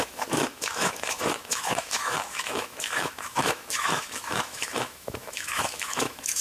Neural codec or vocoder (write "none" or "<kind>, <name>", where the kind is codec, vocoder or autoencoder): autoencoder, DAC-VAE